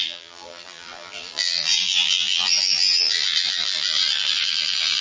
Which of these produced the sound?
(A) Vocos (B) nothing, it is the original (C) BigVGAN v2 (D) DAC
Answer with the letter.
C